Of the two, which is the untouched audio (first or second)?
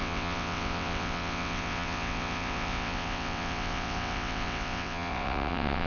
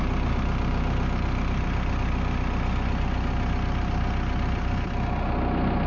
second